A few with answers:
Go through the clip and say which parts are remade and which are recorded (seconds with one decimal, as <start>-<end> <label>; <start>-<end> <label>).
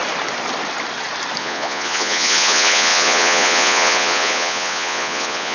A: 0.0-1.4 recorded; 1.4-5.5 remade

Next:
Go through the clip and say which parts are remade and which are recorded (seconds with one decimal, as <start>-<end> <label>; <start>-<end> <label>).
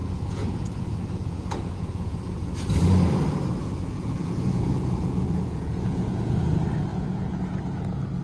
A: 0.0-2.2 remade; 2.2-3.6 recorded; 3.6-6.4 remade; 6.4-6.9 recorded; 6.9-7.4 remade; 7.4-8.2 recorded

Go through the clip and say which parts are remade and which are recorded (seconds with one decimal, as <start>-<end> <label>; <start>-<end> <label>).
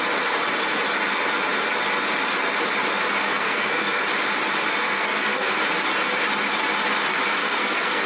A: 0.0-3.2 recorded; 3.2-4.0 remade; 4.0-4.8 recorded; 4.8-5.6 remade; 5.6-7.4 recorded; 7.4-8.1 remade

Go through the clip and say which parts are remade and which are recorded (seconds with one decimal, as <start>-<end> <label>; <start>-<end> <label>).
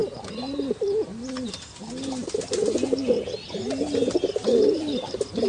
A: 0.0-5.5 recorded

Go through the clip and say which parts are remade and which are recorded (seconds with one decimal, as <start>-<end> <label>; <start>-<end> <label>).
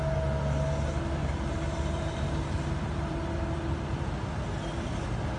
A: 0.0-1.2 recorded; 1.2-3.6 remade; 3.6-5.4 recorded